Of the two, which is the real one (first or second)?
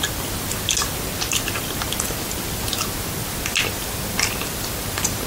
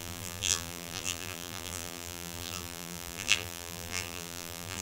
first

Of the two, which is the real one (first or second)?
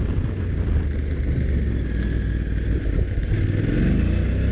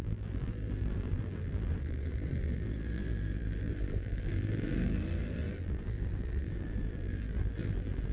first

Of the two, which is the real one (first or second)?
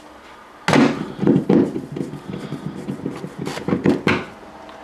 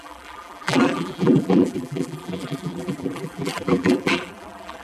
first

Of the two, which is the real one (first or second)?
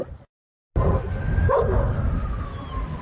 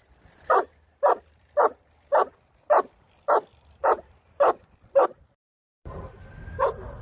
first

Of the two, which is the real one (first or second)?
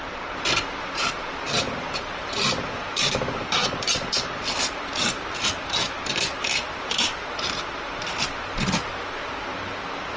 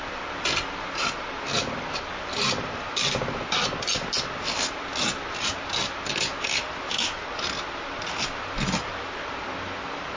second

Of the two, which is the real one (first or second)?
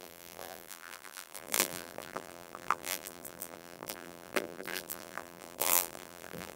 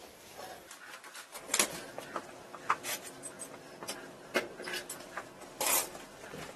second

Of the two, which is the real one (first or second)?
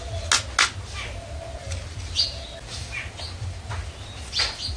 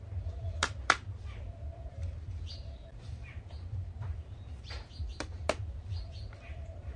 first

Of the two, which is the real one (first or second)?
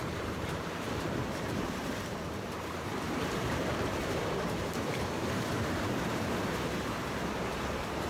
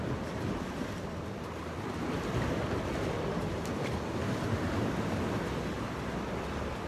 second